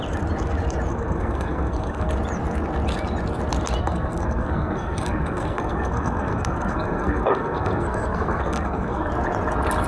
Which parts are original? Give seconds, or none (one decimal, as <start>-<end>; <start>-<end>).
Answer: 0.0-0.9; 2.1-3.8; 9.1-9.9